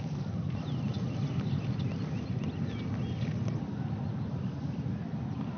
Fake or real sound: real